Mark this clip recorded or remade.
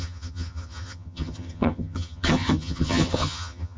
remade